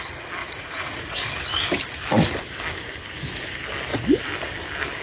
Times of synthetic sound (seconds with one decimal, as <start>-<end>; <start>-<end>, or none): 0.4-1.3